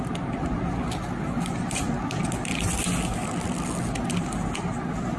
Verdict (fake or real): real